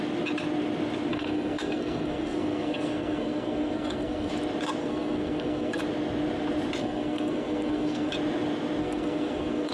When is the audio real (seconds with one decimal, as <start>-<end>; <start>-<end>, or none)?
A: 0.0-1.1; 4.3-4.8; 5.8-6.8; 8.1-8.8